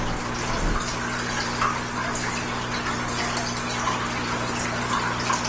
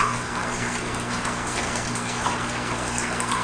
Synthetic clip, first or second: second